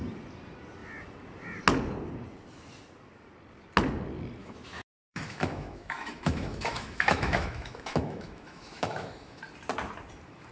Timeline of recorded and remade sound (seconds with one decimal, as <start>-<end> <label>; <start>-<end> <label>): 0.0-4.4 recorded; 4.4-9.4 remade; 9.4-10.5 recorded